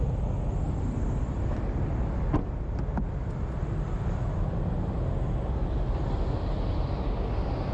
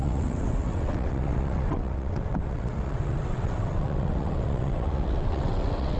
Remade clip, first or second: second